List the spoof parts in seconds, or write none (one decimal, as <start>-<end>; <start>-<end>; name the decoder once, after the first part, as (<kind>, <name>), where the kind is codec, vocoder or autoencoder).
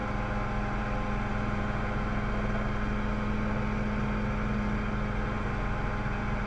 none